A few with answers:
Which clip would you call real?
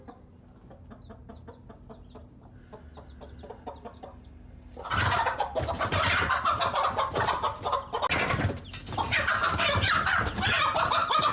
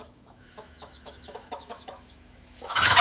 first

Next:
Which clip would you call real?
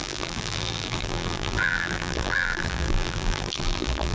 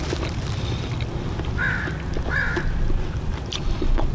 second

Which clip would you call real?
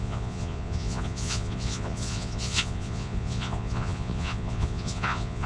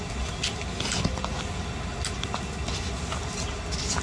second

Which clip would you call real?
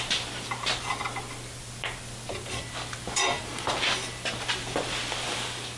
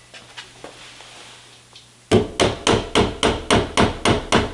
second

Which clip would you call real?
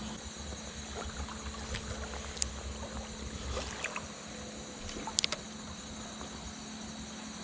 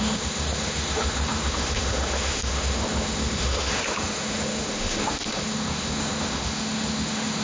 first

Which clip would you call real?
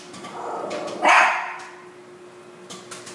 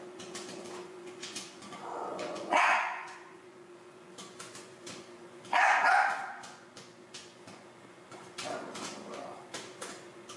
first